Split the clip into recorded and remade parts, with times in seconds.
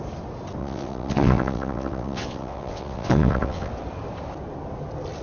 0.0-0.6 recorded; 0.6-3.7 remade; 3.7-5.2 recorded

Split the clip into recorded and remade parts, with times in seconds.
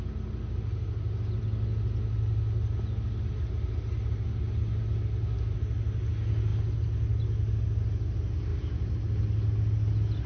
0.0-10.3 recorded